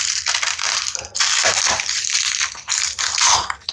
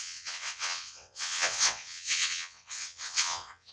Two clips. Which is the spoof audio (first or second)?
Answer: second